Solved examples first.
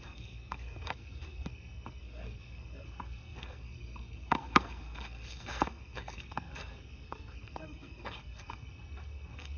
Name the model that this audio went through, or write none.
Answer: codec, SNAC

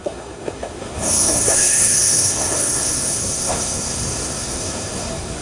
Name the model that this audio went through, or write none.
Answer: codec, SNAC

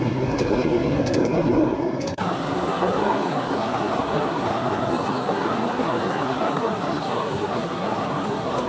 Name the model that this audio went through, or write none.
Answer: codec, SNAC